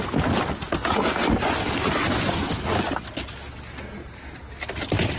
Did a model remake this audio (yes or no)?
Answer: no